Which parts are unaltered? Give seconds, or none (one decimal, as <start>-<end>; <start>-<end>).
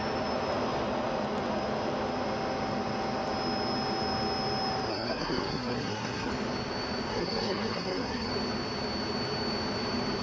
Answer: 0.0-4.9; 6.3-7.1; 8.3-10.2